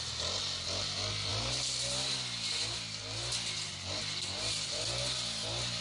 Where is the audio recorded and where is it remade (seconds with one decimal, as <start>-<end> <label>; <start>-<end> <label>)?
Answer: 0.0-5.8 recorded